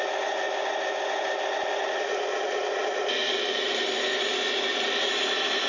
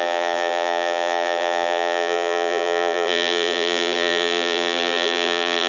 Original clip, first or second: first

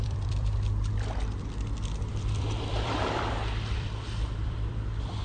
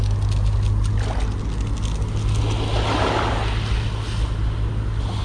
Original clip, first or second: second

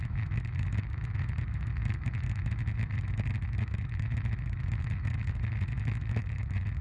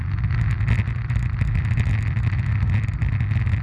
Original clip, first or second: second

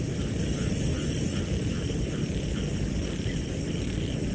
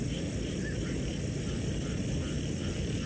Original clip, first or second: second